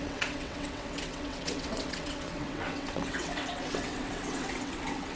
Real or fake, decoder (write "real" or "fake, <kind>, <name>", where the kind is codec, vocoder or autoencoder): fake, vocoder, WaveNeXt